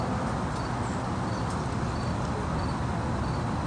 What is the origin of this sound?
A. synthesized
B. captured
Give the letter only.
B